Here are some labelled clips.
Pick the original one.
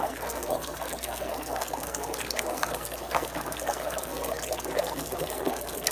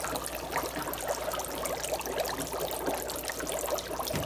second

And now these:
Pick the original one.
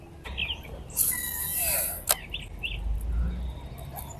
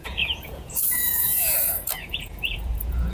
first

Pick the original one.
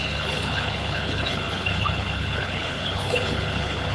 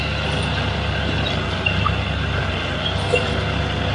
second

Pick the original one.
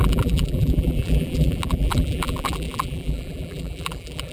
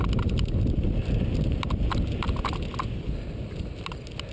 second